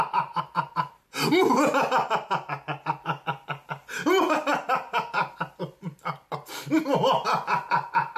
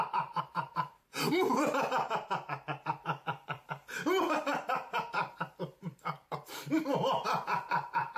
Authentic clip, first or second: first